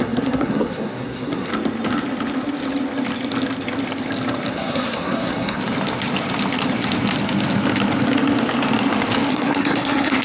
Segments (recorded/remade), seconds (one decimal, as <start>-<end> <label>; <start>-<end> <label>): 0.0-1.5 remade; 1.5-4.5 recorded; 4.5-5.6 remade; 5.6-9.3 recorded; 9.3-10.2 remade